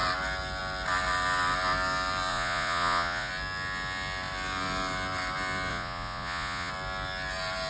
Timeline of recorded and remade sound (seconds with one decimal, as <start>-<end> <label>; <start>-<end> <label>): 0.0-2.3 recorded; 2.3-3.3 remade; 3.3-5.7 recorded; 5.7-6.7 remade; 6.7-7.7 recorded